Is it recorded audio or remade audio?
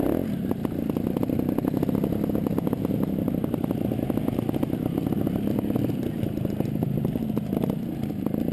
recorded